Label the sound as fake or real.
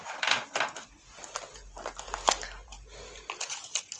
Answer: real